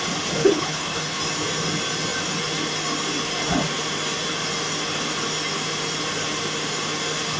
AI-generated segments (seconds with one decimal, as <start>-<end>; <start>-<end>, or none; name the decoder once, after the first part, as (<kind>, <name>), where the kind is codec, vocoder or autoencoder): 0.4-1.2 (codec, HILCodec)

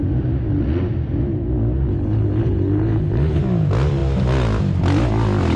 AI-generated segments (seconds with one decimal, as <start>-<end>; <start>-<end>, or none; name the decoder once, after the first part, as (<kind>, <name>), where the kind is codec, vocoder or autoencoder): 1.9-3.4 (codec, HILCodec)

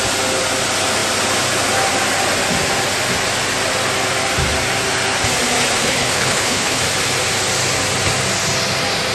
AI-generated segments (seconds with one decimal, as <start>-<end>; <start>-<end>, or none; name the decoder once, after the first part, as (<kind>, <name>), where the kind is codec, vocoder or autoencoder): 5.8-6.8 (codec, HILCodec)

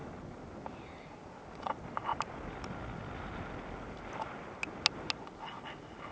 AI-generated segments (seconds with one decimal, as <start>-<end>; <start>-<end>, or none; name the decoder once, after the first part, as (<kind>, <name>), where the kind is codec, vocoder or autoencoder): none

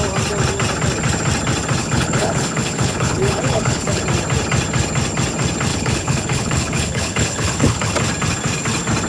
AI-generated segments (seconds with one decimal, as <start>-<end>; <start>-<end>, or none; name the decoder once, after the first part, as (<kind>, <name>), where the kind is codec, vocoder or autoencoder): 1.8-4.0 (codec, HILCodec); 5.7-7.9

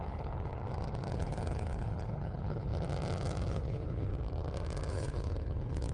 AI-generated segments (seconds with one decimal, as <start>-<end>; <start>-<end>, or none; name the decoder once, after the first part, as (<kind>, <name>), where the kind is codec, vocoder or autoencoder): 0.0-0.5 (codec, HILCodec); 1.1-2.7; 3.5-4.1; 4.9-5.9

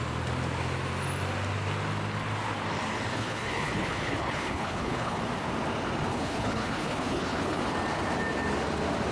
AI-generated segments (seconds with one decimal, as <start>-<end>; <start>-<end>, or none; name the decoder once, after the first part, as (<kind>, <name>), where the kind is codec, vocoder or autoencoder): 3.1-5.2 (codec, HILCodec); 6.1-7.6